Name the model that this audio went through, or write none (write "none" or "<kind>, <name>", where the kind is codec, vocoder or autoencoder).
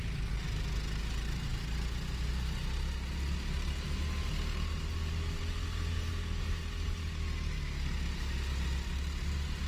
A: none